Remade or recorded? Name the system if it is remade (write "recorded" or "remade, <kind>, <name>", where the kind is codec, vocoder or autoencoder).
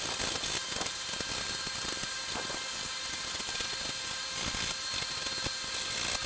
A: recorded